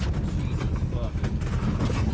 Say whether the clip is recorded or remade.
recorded